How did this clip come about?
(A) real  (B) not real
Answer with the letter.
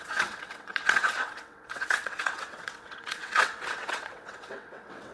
B